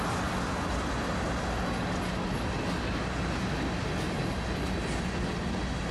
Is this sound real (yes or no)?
yes